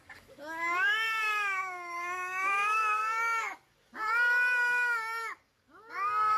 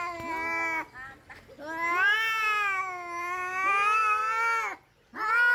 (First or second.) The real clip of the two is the second